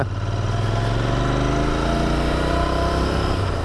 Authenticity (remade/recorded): recorded